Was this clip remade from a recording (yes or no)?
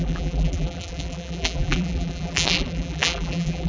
yes